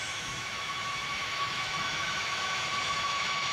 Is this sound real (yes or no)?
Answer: no